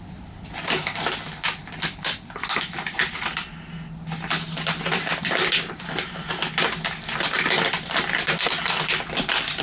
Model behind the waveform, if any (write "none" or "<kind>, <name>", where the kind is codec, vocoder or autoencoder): none